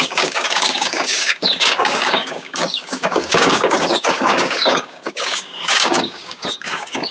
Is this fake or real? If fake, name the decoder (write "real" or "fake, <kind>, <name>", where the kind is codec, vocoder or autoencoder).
fake, codec, DAC